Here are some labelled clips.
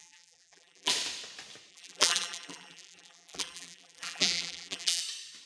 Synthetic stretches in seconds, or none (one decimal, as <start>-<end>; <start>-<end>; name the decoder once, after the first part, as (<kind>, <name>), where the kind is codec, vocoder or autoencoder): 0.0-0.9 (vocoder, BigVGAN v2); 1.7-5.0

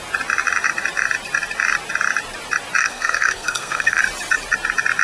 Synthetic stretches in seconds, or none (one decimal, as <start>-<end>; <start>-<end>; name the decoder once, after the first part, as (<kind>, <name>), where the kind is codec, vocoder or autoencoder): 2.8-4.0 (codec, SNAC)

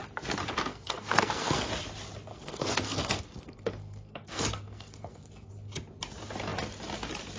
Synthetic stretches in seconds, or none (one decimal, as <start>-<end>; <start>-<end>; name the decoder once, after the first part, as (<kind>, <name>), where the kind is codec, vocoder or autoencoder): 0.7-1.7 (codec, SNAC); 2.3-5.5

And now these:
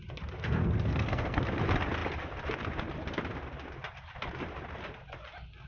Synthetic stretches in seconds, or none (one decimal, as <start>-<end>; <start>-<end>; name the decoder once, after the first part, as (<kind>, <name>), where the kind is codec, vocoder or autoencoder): 0.6-1.4 (codec, SNAC)